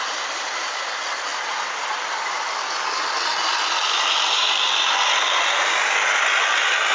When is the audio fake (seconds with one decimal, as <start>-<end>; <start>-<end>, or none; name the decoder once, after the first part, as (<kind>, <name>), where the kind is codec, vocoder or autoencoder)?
none